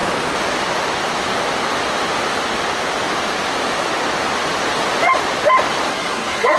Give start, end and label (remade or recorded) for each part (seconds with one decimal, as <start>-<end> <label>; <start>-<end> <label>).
0.0-5.9 recorded; 5.9-6.6 remade